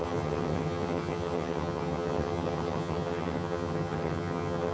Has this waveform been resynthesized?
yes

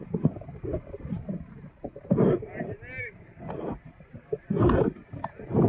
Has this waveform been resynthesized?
no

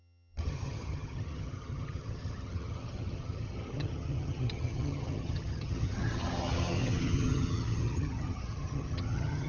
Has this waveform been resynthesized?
yes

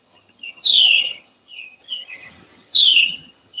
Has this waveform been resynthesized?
yes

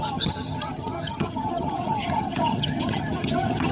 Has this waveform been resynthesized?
yes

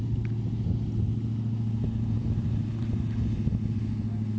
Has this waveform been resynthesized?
no